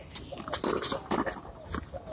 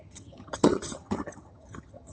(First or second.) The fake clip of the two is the second